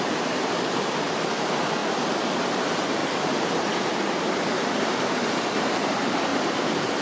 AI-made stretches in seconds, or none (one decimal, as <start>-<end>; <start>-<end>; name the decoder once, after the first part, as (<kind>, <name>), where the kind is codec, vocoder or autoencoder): 0.0-1.8 (vocoder, BigVGAN v2); 2.6-6.3